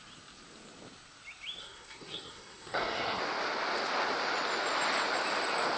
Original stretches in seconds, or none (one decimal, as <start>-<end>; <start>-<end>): 0.0-1.6; 3.2-5.8